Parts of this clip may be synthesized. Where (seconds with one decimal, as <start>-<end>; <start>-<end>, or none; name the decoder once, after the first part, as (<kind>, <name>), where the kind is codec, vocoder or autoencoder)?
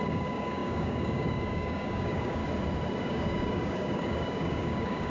0.0-2.4 (codec, DAC); 3.0-5.1